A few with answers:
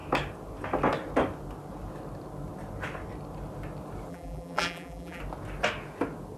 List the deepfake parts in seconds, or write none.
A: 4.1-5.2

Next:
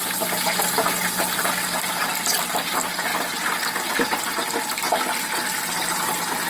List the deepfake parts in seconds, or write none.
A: none

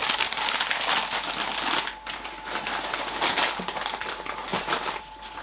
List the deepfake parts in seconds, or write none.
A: 0.0-3.2; 4.5-5.0

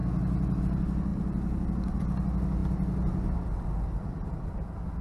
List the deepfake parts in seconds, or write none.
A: none